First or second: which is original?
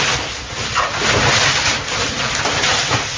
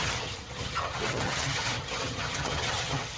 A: first